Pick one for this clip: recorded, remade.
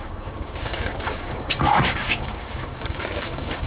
remade